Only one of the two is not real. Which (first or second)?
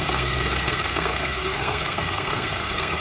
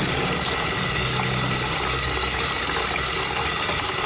first